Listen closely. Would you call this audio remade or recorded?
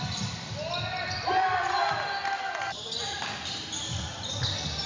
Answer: recorded